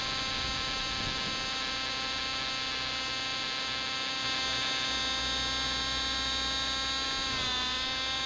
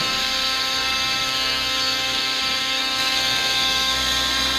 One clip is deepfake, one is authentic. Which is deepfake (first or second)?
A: second